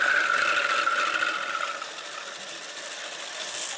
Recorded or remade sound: recorded